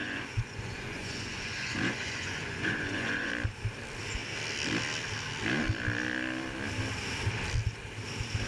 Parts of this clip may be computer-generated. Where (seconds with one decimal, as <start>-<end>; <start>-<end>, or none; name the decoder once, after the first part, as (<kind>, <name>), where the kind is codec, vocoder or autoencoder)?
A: 0.0-3.3 (vocoder, Vocos)